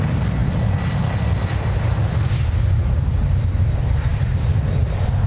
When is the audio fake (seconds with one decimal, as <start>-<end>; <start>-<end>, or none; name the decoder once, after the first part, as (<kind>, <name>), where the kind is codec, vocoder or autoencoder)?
4.1-4.7 (vocoder, BigVGAN v2)